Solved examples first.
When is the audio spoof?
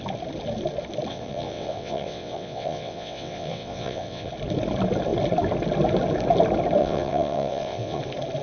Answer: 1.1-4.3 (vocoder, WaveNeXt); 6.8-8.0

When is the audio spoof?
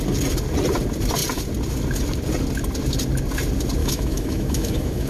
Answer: 3.8-5.1 (autoencoder, DAC-VAE)